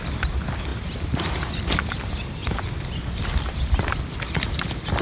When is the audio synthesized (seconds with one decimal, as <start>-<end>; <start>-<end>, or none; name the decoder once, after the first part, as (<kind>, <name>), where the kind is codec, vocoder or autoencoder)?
0.0-5.0 (vocoder, BigVGAN v2)